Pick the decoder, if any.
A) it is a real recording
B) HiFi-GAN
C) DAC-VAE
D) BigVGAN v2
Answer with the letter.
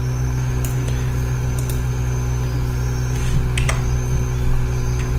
A